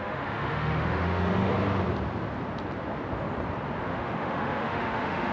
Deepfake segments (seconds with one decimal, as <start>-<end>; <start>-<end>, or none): 0.0-1.5; 3.8-5.3